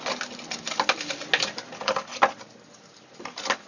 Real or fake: real